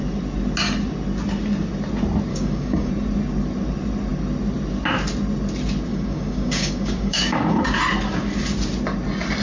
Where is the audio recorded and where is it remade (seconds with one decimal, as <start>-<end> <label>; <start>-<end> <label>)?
0.0-2.3 recorded; 2.3-2.9 remade; 2.9-5.9 recorded; 5.9-7.8 remade; 7.8-9.4 recorded